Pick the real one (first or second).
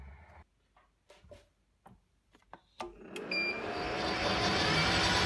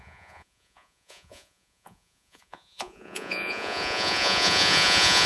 first